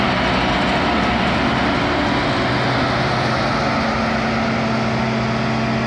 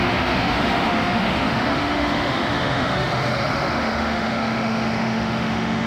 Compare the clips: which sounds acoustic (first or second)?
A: first